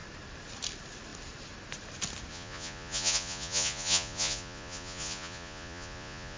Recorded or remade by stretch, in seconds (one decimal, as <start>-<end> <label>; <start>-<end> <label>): 0.0-2.3 recorded; 2.3-6.4 remade